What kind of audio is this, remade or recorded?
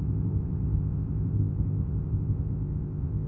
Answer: remade